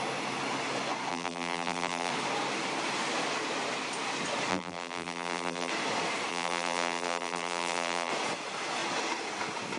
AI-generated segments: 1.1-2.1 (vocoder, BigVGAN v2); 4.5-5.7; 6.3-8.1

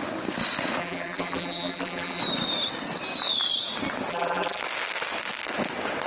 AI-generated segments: 0.8-2.2 (vocoder, BigVGAN v2); 4.1-4.6

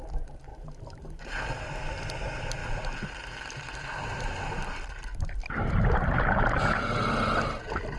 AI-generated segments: 0.5-1.2 (vocoder, BigVGAN v2); 2.6-4.9

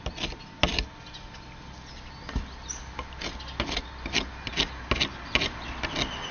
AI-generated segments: none

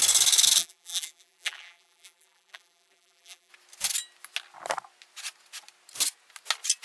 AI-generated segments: 0.6-3.5 (vocoder, BigVGAN v2)

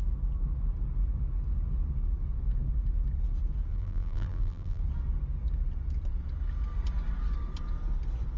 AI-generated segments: 3.7-4.8 (vocoder, BigVGAN v2)

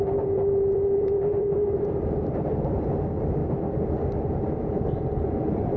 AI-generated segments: 0.0-3.4 (vocoder, BigVGAN v2); 4.4-5.8